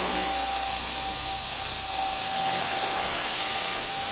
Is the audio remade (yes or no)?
yes